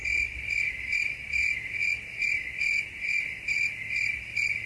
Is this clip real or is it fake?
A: real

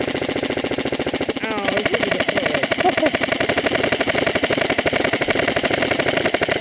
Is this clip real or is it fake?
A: real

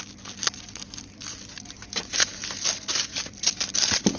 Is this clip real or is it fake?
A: fake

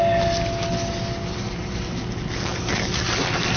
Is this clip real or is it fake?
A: real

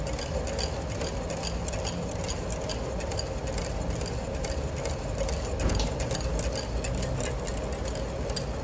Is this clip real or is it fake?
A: real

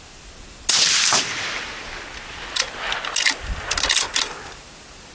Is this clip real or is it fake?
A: real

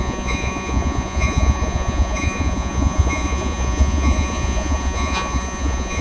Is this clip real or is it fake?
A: fake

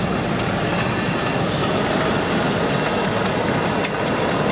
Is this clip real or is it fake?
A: real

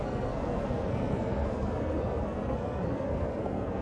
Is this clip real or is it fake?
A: fake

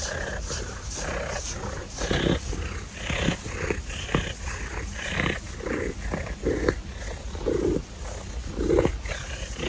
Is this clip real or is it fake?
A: real